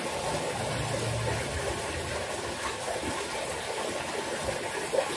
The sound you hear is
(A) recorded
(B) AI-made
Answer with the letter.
A